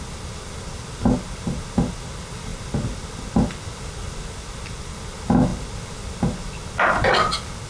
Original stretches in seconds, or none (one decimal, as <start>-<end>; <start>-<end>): 0.0-7.7